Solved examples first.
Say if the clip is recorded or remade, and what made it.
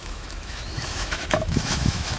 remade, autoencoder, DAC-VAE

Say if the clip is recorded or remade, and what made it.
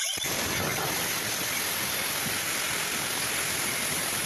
remade, vocoder, BigVGAN v2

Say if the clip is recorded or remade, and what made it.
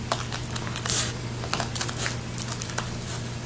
recorded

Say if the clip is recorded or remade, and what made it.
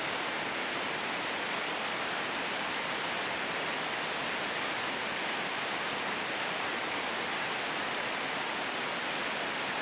recorded